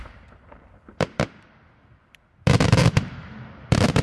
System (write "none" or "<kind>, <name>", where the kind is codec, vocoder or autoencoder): vocoder, BigVGAN v2